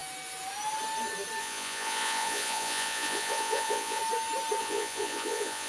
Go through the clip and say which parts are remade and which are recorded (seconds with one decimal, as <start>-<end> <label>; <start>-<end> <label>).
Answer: 0.0-1.4 recorded; 1.4-4.0 remade; 4.0-4.6 recorded; 4.6-5.7 remade